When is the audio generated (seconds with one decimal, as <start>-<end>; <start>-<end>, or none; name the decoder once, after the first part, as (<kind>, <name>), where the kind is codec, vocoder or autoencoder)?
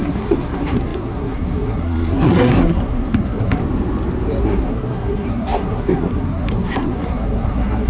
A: 0.0-3.6 (codec, SNAC); 4.4-7.9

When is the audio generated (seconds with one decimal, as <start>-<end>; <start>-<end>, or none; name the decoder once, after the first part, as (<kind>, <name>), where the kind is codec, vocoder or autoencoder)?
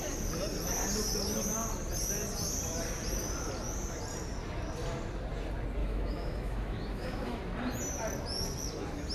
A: 5.8-7.4 (autoencoder, DAC-VAE)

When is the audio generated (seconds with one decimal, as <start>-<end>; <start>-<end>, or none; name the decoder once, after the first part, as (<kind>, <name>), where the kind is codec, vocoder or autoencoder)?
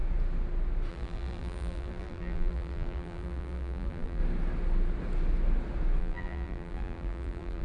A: 0.9-4.2 (vocoder, BigVGAN v2); 6.0-7.6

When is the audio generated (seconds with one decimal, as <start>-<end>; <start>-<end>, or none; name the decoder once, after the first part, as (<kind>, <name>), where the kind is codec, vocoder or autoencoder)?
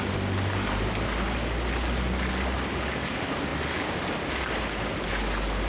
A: none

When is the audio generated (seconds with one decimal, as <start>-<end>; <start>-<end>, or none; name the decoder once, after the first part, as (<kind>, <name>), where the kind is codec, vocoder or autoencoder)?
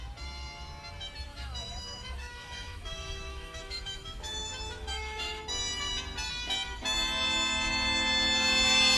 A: 1.3-5.4 (autoencoder, DAC-VAE)